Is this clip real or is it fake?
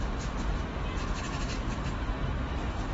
real